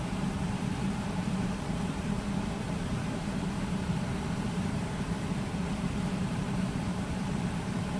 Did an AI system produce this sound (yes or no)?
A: yes